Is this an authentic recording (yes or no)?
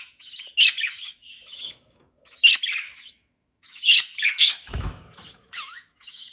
no